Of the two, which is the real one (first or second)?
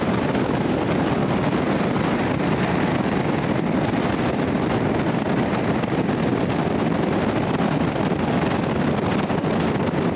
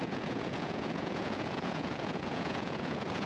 first